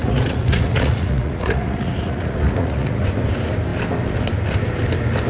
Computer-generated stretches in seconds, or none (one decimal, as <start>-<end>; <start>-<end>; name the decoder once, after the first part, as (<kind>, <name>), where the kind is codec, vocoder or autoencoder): 0.0-3.0 (vocoder, Vocos)